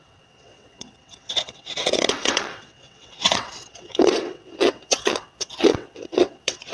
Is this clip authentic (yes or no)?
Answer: no